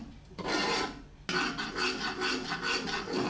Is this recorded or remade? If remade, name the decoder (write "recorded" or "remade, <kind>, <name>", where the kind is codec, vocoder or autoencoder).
recorded